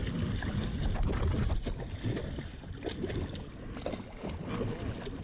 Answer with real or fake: real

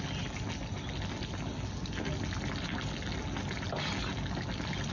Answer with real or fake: real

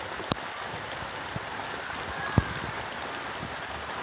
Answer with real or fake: real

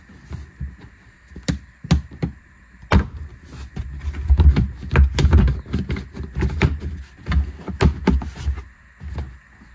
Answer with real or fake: real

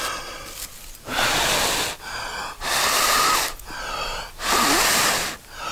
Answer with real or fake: real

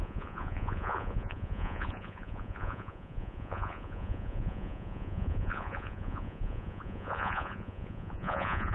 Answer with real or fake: fake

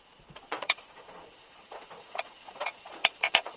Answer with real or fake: fake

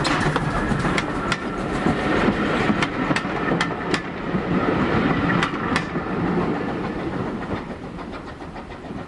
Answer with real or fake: real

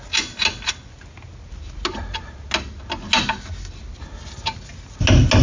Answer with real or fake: real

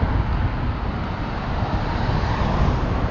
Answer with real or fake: real